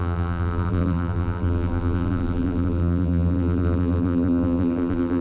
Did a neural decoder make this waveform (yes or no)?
yes